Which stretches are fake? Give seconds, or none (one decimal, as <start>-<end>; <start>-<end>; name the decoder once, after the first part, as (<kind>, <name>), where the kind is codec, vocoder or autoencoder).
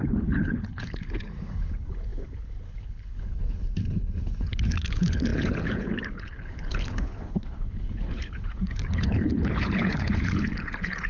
0.0-11.1 (codec, HILCodec)